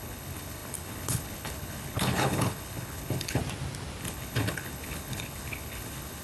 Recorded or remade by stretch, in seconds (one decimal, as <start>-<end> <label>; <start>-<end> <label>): 0.0-3.4 remade; 3.4-4.0 recorded; 4.0-6.2 remade